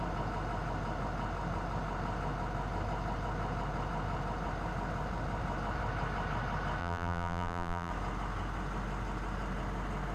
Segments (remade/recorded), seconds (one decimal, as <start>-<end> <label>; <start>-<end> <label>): 0.0-6.8 recorded; 6.8-7.9 remade; 7.9-10.1 recorded